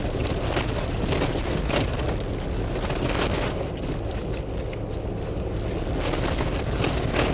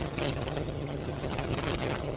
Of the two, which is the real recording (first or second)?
first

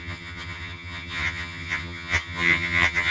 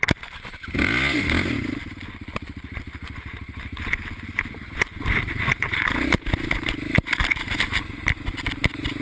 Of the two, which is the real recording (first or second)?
second